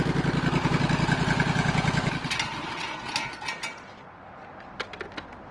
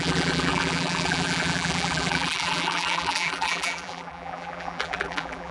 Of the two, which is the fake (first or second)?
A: second